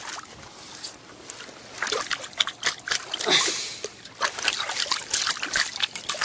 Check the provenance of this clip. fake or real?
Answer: real